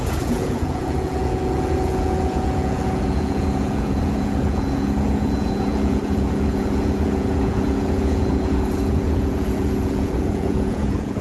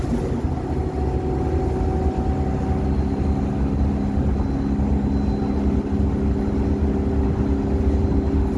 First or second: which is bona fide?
second